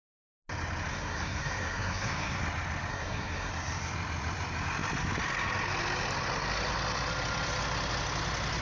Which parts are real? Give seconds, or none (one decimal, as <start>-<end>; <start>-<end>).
0.0-0.9; 2.4-2.9; 3.5-8.6